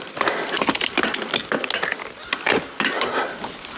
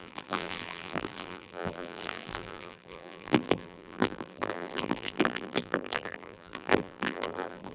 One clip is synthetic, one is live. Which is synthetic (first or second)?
second